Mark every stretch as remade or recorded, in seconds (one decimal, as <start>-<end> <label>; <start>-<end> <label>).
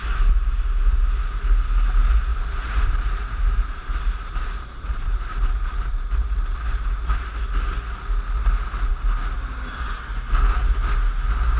0.0-1.0 remade; 1.0-2.3 recorded; 2.3-7.3 remade; 7.3-11.6 recorded